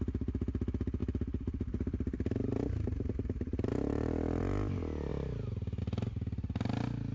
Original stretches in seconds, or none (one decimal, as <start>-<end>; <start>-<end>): 0.0-1.0; 4.4-7.1